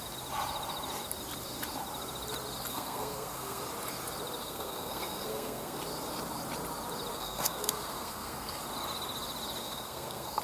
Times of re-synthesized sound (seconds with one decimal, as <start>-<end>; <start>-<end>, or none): 2.7-3.6; 4.4-5.8; 7.1-8.6; 9.6-10.4